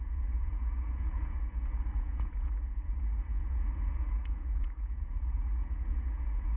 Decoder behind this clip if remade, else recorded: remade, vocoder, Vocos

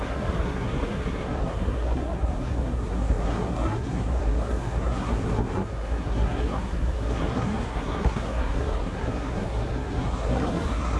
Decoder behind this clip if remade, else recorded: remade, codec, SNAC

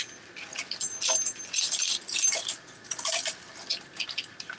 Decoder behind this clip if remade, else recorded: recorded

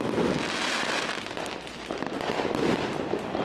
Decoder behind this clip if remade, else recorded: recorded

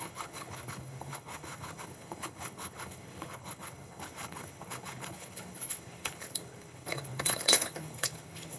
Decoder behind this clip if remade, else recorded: remade, codec, HILCodec